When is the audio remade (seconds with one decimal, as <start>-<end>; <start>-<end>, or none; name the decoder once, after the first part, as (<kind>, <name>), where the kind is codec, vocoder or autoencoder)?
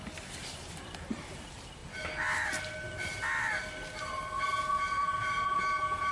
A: none